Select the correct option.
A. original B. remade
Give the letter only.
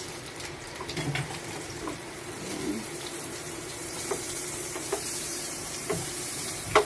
B